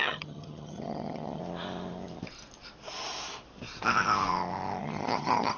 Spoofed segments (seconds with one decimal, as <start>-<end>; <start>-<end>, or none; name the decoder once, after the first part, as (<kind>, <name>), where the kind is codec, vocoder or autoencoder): 0.0-1.4 (vocoder, HiFi-GAN); 4.8-5.6